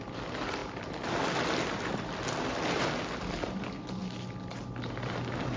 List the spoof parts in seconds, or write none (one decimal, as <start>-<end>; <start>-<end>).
none